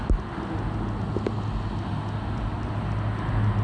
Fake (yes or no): no